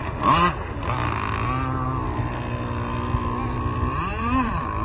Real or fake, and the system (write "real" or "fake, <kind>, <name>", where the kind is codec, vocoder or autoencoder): real